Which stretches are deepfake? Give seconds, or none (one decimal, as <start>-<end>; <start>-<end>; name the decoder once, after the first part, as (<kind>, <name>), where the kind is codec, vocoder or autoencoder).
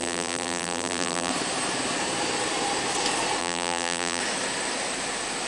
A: 0.0-1.3 (vocoder, BigVGAN v2); 3.4-4.2